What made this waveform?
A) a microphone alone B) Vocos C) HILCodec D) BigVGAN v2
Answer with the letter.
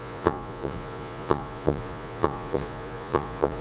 B